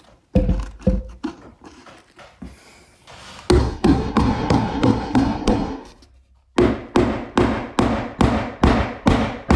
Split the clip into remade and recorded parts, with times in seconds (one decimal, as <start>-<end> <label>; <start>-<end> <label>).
0.0-3.6 recorded; 3.6-6.0 remade; 6.0-9.6 recorded